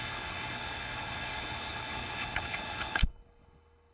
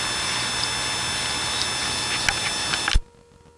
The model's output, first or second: first